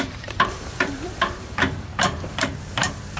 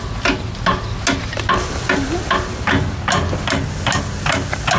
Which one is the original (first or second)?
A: second